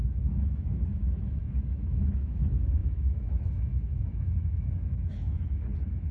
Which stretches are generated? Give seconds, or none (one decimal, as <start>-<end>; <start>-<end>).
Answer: 0.0-6.1